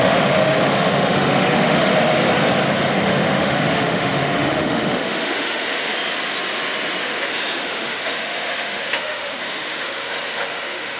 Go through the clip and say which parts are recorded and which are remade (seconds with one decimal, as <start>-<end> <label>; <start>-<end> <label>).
0.0-1.9 remade; 1.9-2.9 recorded; 2.9-5.9 remade; 5.9-7.0 recorded; 7.0-11.0 remade